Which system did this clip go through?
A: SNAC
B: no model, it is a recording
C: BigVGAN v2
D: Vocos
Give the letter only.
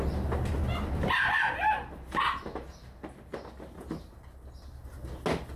B